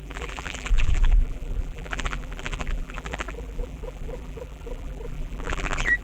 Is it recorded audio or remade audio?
remade